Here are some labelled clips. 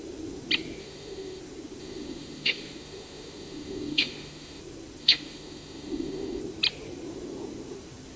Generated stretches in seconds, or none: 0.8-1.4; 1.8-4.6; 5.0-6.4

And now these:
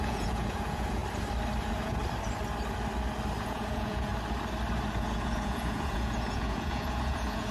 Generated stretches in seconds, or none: 0.0-1.0; 1.6-2.0; 3.4-4.1; 5.0-7.5

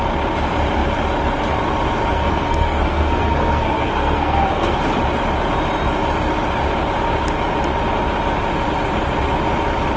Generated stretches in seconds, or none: 2.1-4.8